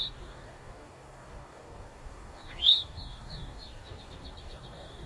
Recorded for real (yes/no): no